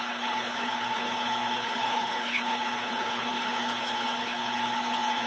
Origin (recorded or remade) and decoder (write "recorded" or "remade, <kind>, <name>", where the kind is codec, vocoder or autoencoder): remade, codec, HILCodec